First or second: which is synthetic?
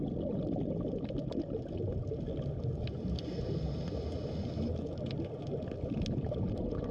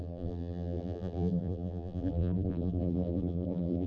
second